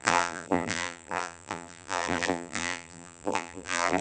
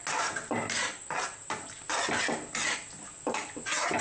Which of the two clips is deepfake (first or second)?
first